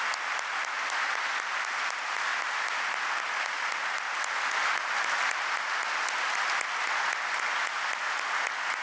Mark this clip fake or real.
real